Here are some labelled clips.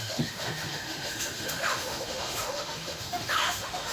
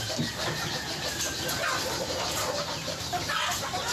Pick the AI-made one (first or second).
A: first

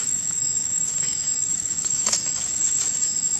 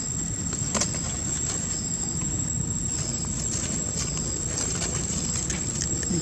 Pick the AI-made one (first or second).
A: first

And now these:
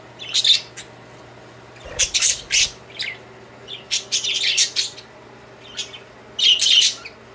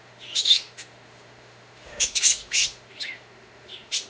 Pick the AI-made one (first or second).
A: second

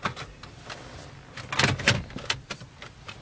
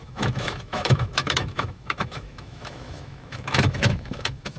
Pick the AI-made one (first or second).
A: second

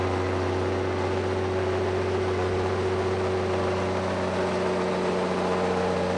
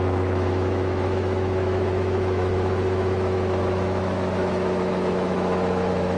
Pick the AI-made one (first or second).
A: second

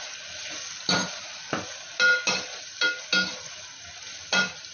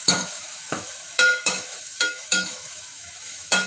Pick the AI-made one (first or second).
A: second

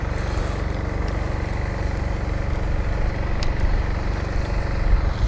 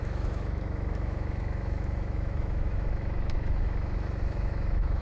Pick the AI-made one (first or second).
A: second